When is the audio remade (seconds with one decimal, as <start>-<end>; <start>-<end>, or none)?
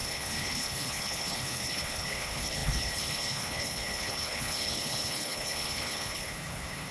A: 0.0-6.9